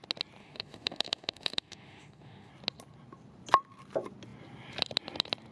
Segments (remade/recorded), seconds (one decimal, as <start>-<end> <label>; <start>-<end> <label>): 0.0-0.4 recorded; 0.4-2.5 remade; 2.5-5.5 recorded